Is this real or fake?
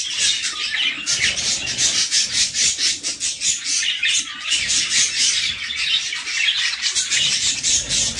real